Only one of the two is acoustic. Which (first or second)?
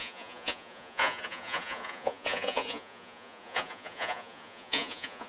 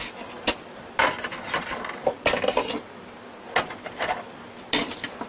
second